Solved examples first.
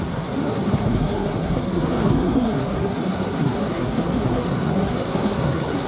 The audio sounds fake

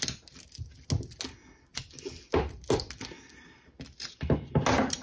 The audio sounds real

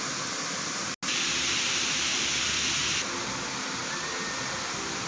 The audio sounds real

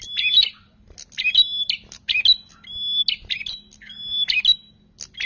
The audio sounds real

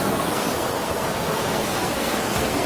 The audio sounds fake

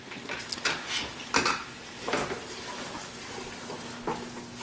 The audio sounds real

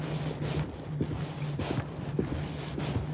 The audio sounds real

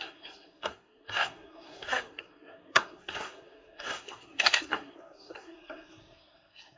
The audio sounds fake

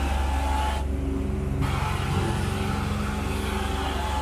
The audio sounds real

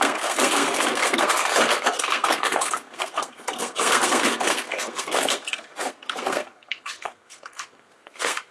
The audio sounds fake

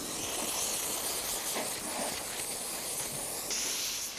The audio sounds real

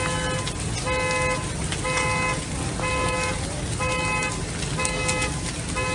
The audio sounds real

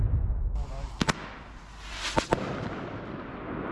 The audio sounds real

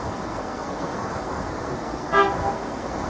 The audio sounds fake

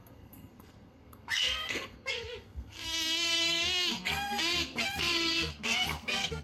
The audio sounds fake